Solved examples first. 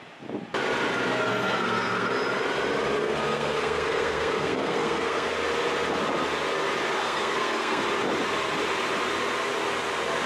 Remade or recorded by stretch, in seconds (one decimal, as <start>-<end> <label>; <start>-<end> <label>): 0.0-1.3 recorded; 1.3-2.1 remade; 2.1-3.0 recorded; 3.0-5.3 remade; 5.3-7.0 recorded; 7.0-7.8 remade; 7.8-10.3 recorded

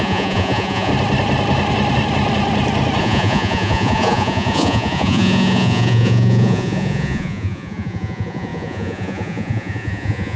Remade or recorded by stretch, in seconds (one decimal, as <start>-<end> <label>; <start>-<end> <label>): 0.0-0.9 remade; 0.9-3.0 recorded; 3.0-10.4 remade

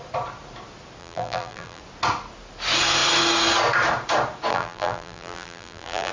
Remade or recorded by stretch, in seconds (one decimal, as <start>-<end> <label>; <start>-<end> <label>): 0.0-1.0 recorded; 1.0-1.8 remade; 1.8-4.5 recorded; 4.5-6.1 remade

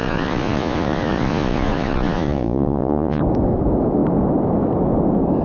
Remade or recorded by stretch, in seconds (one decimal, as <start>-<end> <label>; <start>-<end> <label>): 0.0-3.2 remade; 3.2-5.4 recorded

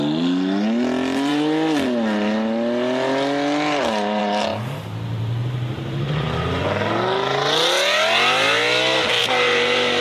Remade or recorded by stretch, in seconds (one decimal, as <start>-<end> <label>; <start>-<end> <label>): 0.0-5.4 recorded; 5.4-6.6 remade; 6.6-9.2 recorded; 9.2-10.0 remade

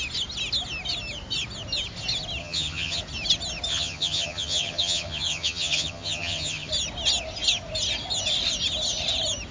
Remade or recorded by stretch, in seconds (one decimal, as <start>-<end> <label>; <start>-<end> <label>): 0.0-2.4 recorded; 2.4-3.0 remade; 3.0-3.7 recorded; 3.7-6.7 remade; 6.7-9.5 recorded

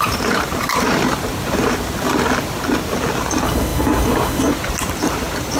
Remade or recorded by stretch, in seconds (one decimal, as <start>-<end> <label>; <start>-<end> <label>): 0.0-2.1 remade; 2.1-3.2 recorded; 3.2-5.6 remade